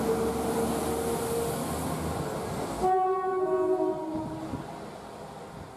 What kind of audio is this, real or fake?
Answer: real